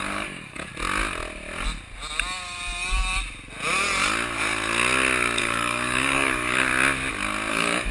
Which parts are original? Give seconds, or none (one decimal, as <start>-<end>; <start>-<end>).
0.7-5.4; 6.7-7.5